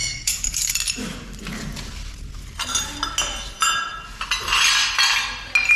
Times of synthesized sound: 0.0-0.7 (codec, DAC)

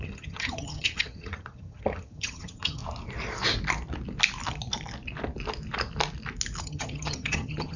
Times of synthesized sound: 0.0-2.8 (vocoder, HiFi-GAN); 6.6-7.8

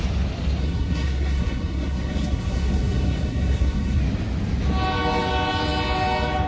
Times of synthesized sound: 0.6-4.0 (codec, SNAC)

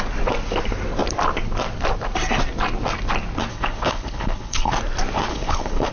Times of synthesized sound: 3.5-4.7 (codec, HILCodec); 5.3-5.9

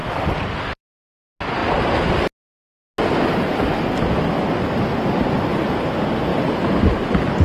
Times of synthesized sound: 0.0-1.1 (vocoder, BigVGAN v2)

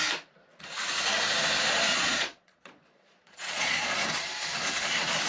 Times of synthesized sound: 1.9-4.0 (vocoder, Vocos)